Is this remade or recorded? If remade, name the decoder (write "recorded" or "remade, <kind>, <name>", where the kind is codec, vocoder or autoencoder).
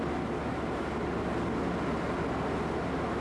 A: recorded